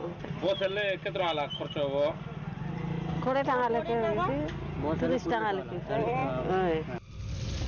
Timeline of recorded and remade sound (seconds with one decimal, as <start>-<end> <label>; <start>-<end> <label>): 0.0-7.7 recorded